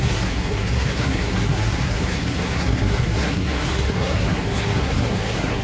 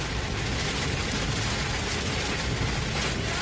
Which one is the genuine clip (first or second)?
second